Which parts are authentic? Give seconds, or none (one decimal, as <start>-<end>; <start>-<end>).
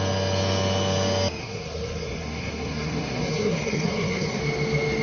0.0-1.4; 4.4-5.0